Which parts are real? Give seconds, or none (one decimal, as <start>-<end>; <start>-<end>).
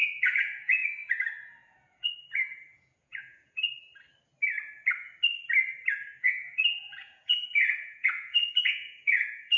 3.7-6.2